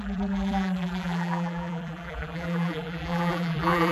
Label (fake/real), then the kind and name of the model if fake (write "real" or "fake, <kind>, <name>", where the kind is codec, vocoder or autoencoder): fake, vocoder, BigVGAN v2